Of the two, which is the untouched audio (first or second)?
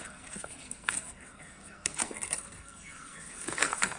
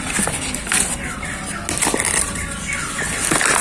second